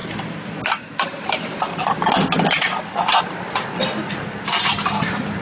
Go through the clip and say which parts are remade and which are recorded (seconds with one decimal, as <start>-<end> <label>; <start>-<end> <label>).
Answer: 0.0-5.4 recorded